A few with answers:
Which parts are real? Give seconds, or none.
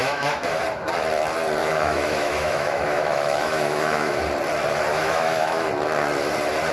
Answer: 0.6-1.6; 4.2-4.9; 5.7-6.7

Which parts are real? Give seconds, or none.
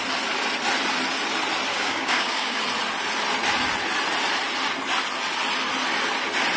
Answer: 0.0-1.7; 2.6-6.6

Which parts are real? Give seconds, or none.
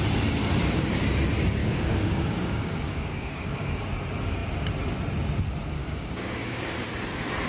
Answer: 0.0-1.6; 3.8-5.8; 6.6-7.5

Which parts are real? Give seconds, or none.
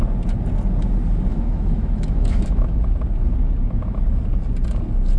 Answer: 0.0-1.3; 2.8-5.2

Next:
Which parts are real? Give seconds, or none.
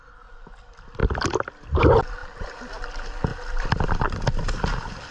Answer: 0.0-1.0; 1.8-2.2; 2.9-5.1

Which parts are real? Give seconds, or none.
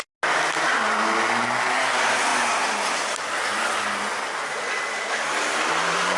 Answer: 0.0-6.2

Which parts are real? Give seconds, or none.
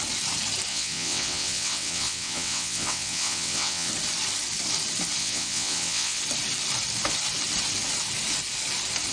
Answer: 0.0-0.7; 3.9-5.2; 6.2-9.1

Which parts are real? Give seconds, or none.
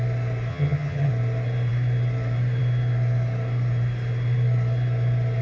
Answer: 0.0-0.5; 1.1-5.4